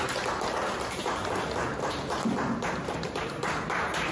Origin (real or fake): fake